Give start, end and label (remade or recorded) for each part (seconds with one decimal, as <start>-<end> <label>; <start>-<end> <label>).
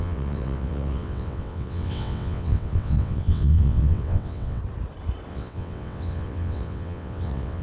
0.0-4.6 remade; 4.6-5.3 recorded; 5.3-7.6 remade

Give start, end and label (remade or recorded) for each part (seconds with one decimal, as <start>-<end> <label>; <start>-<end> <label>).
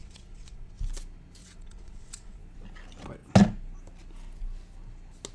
0.0-0.8 remade; 0.8-1.4 recorded; 1.4-2.4 remade; 2.4-5.3 recorded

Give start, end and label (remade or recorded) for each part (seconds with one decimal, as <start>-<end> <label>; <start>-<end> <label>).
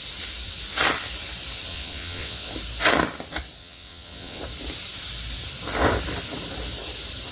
0.0-1.7 recorded; 1.7-2.5 remade; 2.5-3.6 recorded; 3.6-4.4 remade; 4.4-7.3 recorded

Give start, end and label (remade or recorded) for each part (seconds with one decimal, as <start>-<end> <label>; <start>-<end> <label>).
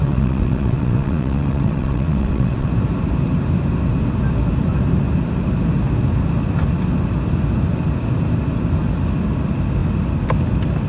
0.0-2.7 remade; 2.7-10.9 recorded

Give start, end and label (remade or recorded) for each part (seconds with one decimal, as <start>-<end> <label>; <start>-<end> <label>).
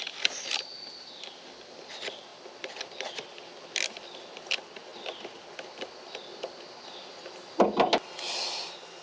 0.0-9.0 recorded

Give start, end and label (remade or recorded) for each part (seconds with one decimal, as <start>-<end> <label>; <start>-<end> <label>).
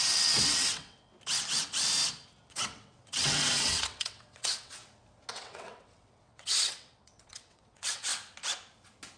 0.0-1.1 remade; 1.1-2.5 recorded; 2.5-4.8 remade; 4.8-5.3 recorded; 5.3-8.1 remade; 8.1-9.2 recorded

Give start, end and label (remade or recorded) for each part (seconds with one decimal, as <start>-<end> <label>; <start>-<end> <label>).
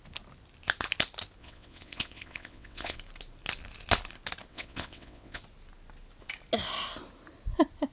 0.0-1.4 recorded; 1.4-3.0 remade; 3.0-4.5 recorded; 4.5-5.4 remade; 5.4-7.9 recorded